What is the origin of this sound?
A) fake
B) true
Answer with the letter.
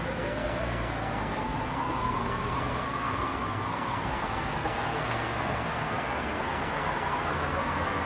A